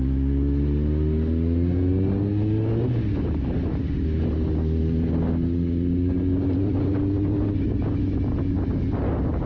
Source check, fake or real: real